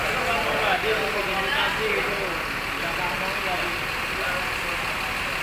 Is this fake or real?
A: real